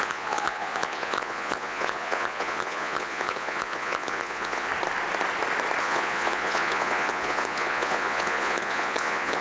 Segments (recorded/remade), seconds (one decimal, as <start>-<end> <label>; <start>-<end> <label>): 0.0-4.7 remade; 4.7-5.8 recorded; 5.8-9.4 remade